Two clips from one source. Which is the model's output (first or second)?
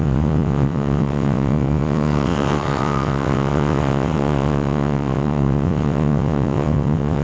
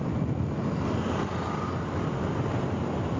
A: first